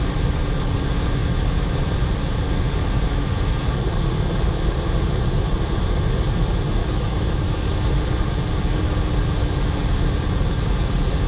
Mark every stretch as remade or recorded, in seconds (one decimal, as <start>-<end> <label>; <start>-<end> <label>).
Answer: 0.0-6.8 recorded; 6.8-7.5 remade; 7.5-11.3 recorded